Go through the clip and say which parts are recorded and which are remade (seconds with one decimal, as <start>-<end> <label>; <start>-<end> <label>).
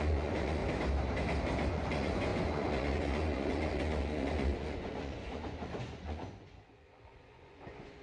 0.0-0.6 remade; 0.6-1.7 recorded; 1.7-8.0 remade